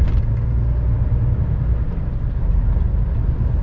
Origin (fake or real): real